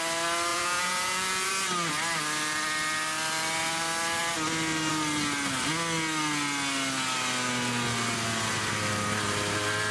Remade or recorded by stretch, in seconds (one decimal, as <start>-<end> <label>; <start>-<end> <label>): 0.0-0.5 recorded; 0.5-1.5 remade; 1.5-9.9 recorded